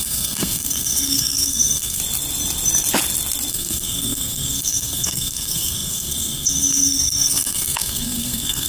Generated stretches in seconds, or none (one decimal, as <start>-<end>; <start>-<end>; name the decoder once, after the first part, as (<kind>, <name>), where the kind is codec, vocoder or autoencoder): 0.0-2.0 (codec, SNAC); 3.5-8.7